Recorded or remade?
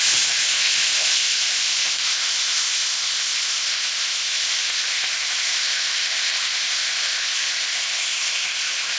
remade